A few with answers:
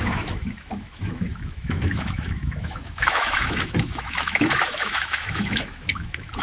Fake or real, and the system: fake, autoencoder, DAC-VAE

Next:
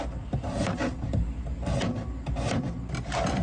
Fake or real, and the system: real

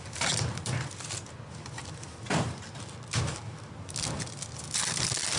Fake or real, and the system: real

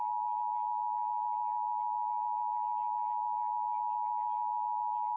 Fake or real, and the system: real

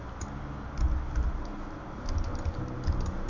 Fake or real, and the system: real